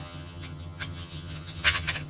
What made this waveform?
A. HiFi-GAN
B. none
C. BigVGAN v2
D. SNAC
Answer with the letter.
A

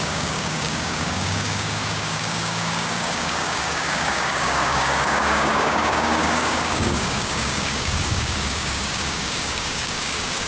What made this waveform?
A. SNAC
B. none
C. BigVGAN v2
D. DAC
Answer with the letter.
D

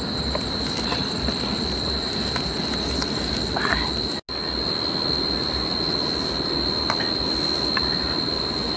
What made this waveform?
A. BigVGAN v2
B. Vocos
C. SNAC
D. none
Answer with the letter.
D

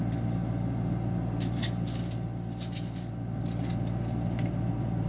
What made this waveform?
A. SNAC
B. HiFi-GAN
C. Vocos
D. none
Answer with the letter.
D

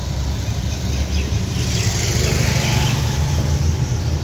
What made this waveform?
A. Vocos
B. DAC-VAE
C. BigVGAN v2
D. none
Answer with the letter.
D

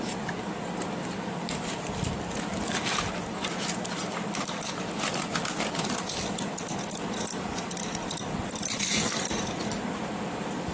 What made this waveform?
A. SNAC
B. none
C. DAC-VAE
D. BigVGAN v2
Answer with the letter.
B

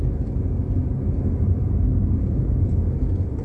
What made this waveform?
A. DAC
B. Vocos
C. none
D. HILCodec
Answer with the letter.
C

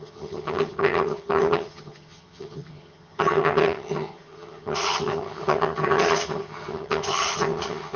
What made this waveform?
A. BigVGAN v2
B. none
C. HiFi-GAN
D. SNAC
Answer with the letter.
C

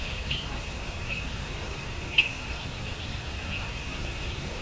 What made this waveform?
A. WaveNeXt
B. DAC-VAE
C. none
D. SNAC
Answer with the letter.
D